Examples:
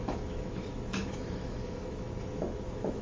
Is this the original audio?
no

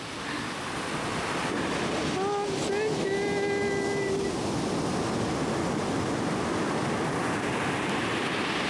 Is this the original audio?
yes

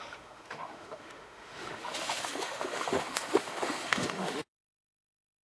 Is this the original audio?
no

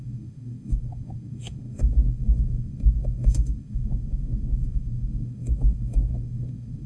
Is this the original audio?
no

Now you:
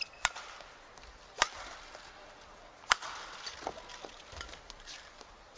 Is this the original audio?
yes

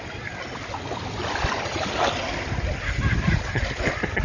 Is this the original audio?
yes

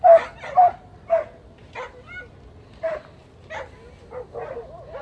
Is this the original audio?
yes